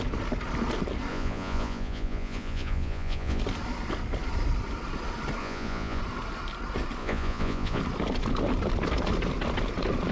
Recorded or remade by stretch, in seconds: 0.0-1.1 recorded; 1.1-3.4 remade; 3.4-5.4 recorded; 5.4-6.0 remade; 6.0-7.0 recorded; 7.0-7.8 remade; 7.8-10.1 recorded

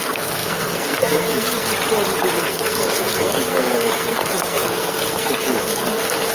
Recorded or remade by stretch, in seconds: 0.0-1.7 remade; 1.7-2.4 recorded; 2.4-6.3 remade

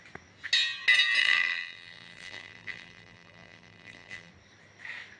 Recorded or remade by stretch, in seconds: 0.0-1.2 recorded; 1.2-4.3 remade; 4.3-5.2 recorded

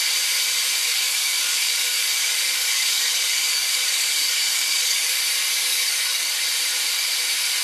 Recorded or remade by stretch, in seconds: 0.0-0.8 recorded; 0.8-5.2 remade; 5.2-5.7 recorded; 5.7-6.4 remade; 6.4-7.6 recorded

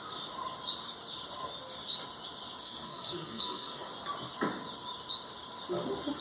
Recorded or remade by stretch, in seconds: 0.0-2.6 recorded; 2.6-3.9 remade; 3.9-6.2 recorded

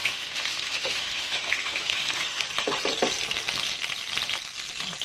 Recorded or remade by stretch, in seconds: 0.0-2.4 remade; 2.4-5.0 recorded

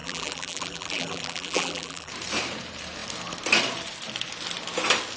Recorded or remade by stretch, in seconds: 0.0-2.1 remade; 2.1-5.2 recorded